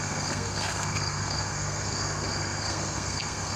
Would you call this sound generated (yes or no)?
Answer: yes